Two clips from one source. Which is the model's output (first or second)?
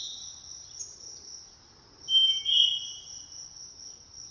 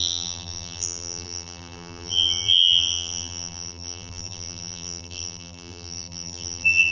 second